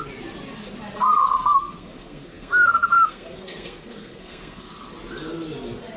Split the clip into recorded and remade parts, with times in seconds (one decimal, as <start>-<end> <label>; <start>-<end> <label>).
0.0-1.2 recorded; 1.2-4.8 remade; 4.8-6.0 recorded